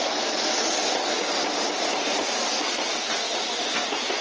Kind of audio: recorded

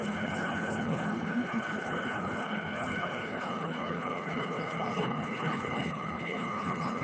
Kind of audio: remade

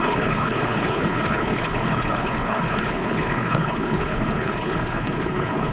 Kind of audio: remade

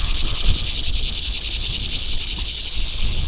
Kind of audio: remade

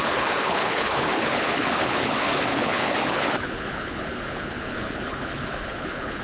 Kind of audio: remade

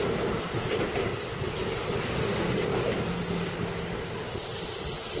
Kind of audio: recorded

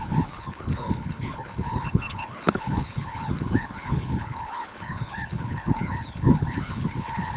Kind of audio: remade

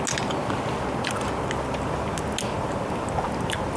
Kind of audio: recorded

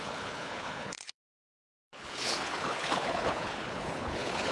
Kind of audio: remade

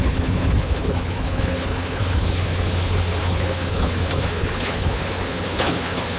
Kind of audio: remade